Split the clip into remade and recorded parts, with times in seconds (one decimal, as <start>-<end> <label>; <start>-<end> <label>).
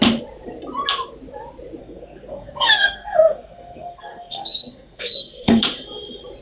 0.0-1.8 recorded; 1.8-5.6 remade; 5.6-6.4 recorded